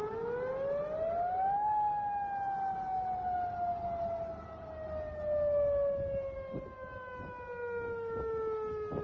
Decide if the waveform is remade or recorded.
recorded